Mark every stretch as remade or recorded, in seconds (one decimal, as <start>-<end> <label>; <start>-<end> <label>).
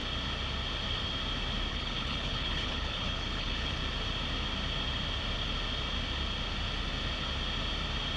0.0-1.7 recorded; 1.7-3.8 remade; 3.8-8.2 recorded